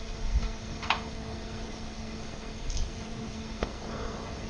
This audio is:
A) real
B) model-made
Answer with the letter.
B